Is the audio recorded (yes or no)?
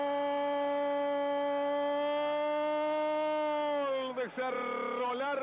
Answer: yes